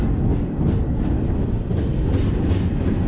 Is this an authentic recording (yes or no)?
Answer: yes